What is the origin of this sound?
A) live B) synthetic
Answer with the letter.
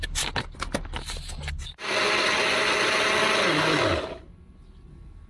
A